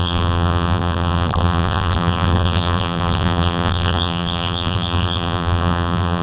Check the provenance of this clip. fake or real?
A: fake